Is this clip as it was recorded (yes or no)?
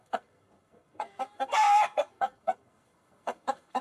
no